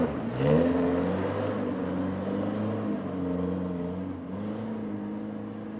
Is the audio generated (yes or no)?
no